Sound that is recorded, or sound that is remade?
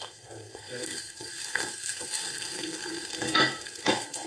remade